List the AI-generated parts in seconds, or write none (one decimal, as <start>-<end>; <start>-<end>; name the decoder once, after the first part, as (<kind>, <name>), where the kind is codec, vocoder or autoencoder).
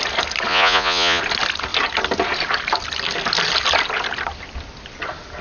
0.5-1.2 (vocoder, Vocos)